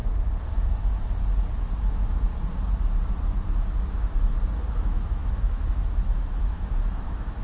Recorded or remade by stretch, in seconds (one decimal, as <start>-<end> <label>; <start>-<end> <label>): 0.0-1.8 recorded; 1.8-2.3 remade; 2.3-4.7 recorded; 4.7-7.4 remade